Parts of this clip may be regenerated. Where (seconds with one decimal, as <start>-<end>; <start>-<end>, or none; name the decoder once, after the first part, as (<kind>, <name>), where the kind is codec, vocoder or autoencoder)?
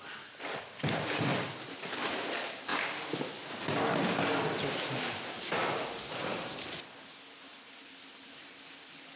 1.3-2.2 (vocoder, BigVGAN v2); 6.3-6.8